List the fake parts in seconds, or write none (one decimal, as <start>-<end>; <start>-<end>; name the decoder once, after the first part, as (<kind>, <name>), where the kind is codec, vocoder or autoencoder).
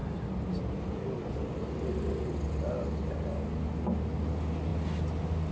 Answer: none